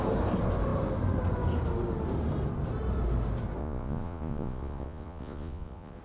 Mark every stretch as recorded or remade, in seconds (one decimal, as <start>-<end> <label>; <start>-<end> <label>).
0.0-3.6 recorded; 3.6-6.0 remade